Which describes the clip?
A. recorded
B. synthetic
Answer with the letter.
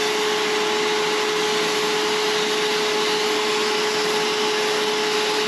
A